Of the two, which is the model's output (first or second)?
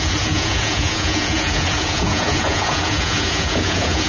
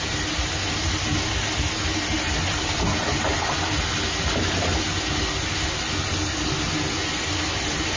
first